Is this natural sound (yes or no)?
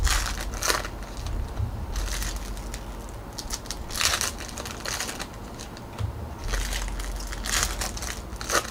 yes